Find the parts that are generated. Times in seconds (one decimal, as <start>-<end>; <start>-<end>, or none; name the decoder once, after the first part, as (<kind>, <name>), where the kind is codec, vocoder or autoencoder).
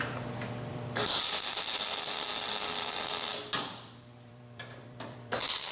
0.0-2.3 (vocoder, BigVGAN v2); 3.4-5.7